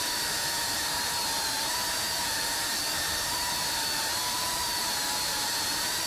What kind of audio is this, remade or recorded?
remade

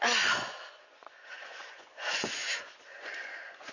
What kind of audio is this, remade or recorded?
remade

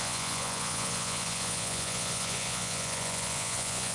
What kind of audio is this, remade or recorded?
remade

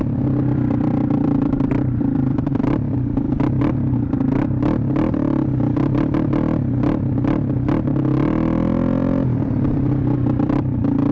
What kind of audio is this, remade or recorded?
remade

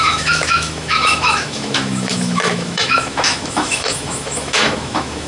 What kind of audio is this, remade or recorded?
remade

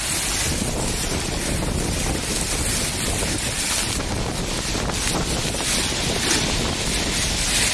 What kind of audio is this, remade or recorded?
recorded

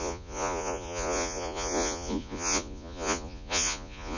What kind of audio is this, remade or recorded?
remade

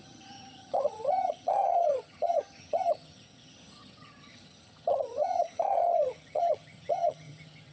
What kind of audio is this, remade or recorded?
remade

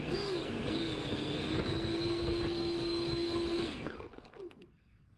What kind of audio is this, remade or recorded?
remade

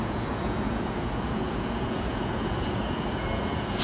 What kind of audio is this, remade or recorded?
remade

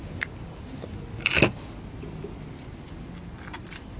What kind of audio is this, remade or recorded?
recorded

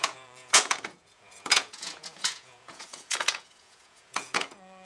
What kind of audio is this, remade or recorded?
remade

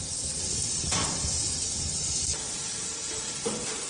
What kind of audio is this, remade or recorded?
recorded